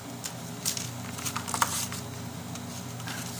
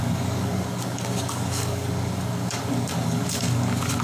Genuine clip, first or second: first